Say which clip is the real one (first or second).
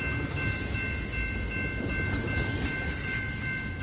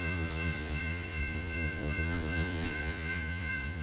first